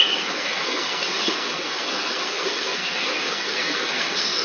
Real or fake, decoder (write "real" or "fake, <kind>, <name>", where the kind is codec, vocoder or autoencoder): fake, codec, SNAC